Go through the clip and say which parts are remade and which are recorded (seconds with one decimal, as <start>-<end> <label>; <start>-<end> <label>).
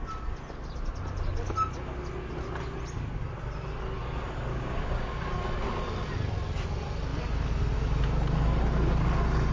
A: 0.0-4.5 recorded; 4.5-5.2 remade; 5.2-9.5 recorded